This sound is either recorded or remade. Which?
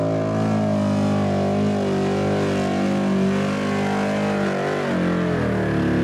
recorded